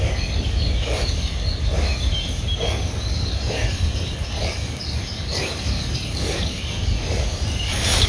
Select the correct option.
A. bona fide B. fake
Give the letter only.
B